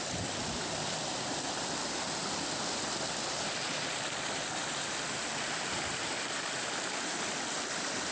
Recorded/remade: recorded